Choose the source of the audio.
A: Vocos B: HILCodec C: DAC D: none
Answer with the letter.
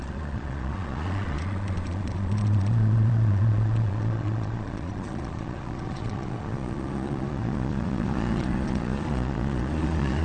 A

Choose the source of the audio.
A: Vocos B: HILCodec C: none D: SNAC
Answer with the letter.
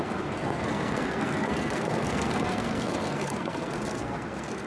D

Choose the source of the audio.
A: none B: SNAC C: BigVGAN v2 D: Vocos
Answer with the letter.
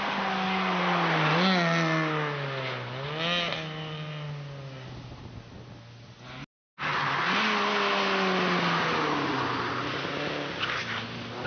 A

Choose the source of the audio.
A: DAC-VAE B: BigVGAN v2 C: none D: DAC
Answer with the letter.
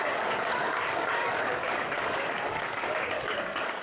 D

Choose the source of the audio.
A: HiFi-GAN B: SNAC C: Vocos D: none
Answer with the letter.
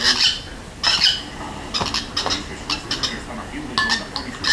D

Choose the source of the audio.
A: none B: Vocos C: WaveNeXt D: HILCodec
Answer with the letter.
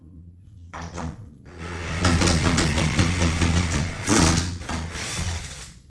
B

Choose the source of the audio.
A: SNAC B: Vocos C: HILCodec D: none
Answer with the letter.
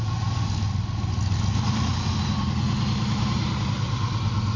D